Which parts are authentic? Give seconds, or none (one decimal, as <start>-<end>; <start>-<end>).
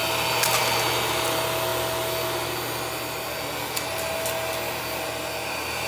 0.0-5.9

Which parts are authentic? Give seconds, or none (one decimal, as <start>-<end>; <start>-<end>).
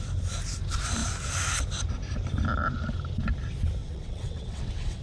0.0-3.8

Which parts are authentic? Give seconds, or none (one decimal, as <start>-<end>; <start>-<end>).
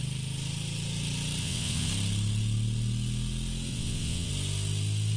0.0-1.4; 1.9-3.7; 4.3-5.2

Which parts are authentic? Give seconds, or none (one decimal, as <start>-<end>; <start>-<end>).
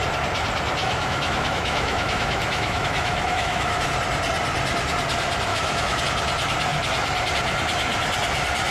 0.0-0.8; 3.9-5.5; 6.0-8.7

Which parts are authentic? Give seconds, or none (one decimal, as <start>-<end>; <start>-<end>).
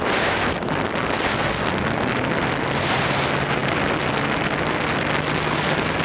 0.0-6.0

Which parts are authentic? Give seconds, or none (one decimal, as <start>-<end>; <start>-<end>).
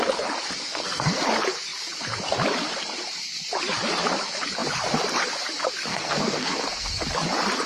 0.0-0.6; 1.2-5.9; 7.0-7.7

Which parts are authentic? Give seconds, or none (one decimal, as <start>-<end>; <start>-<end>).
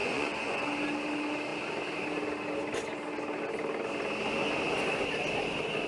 0.6-5.9